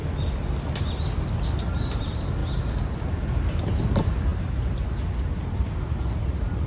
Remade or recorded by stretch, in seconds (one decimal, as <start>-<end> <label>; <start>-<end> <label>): 0.0-6.7 recorded